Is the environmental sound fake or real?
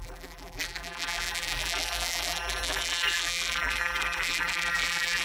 fake